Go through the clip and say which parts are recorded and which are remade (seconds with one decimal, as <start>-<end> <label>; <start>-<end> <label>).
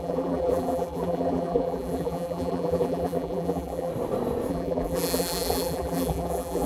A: 0.0-3.9 remade; 3.9-4.5 recorded; 4.5-6.7 remade